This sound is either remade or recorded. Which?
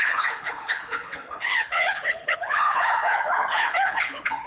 remade